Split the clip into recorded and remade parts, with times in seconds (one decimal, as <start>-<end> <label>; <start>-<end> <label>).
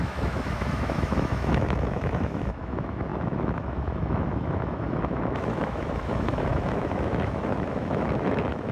0.0-8.7 remade